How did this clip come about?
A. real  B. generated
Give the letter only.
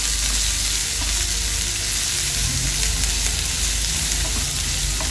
A